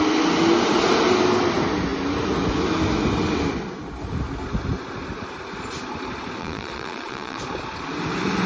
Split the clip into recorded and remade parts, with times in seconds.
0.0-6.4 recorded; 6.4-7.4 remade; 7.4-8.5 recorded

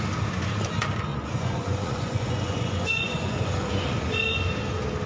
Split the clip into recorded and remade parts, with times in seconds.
0.0-1.1 recorded; 1.1-4.2 remade; 4.2-5.1 recorded

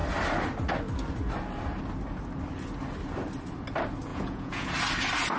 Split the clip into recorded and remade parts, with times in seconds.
0.0-4.1 recorded; 4.1-4.7 remade; 4.7-5.4 recorded

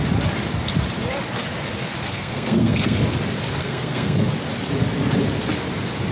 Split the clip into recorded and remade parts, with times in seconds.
0.0-2.1 recorded; 2.1-3.0 remade; 3.0-3.6 recorded; 3.6-4.3 remade; 4.3-6.1 recorded

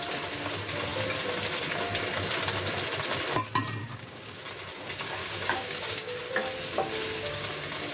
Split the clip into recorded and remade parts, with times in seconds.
0.0-3.8 recorded; 3.8-4.4 remade; 4.4-5.2 recorded; 5.2-6.2 remade; 6.2-7.9 recorded

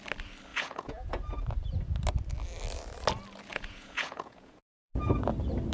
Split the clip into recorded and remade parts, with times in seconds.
0.0-0.5 recorded; 0.5-1.2 remade; 1.2-3.5 recorded; 3.5-4.9 remade; 4.9-5.7 recorded